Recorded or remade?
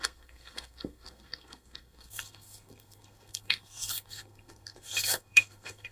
remade